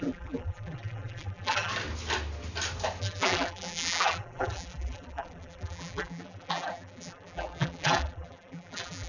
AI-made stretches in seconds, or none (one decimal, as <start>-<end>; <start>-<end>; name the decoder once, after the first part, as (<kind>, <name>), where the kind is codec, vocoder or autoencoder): 0.0-1.7 (vocoder, BigVGAN v2); 3.0-9.1

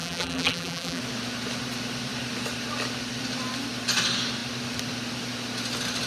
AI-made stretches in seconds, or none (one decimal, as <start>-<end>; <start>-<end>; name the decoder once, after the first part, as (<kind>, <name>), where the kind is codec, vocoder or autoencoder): 0.0-1.0 (vocoder, BigVGAN v2)

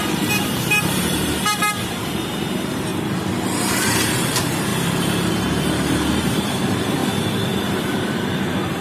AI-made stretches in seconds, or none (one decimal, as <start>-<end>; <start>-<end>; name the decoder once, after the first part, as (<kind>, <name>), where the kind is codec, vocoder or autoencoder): 0.0-2.9 (vocoder, BigVGAN v2); 3.4-4.7; 5.3-7.0; 7.7-8.8

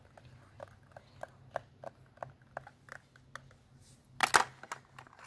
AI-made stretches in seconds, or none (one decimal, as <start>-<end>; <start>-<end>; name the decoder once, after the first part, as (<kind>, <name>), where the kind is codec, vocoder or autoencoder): none

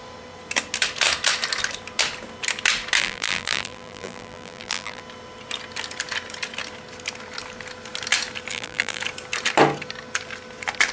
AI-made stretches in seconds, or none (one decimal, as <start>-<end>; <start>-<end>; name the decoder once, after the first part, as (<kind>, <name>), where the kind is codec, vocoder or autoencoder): 3.0-5.0 (vocoder, BigVGAN v2); 8.5-9.0

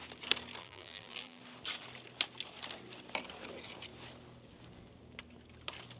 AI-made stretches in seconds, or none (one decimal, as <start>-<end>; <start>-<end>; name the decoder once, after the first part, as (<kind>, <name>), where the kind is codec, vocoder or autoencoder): 0.6-1.4 (vocoder, BigVGAN v2)

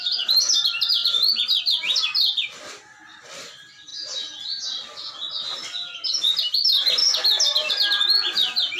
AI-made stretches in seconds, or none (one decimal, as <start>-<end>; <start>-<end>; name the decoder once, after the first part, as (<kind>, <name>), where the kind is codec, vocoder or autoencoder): none